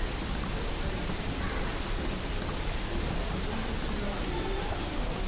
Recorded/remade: recorded